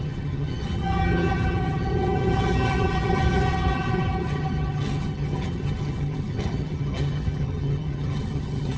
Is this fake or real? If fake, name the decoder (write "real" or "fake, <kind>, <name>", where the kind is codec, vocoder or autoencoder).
fake, vocoder, HiFi-GAN